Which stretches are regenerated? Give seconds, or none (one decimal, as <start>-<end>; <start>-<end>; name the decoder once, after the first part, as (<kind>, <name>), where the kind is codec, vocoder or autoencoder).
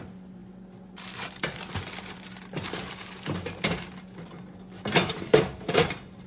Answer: 5.0-6.3 (vocoder, BigVGAN v2)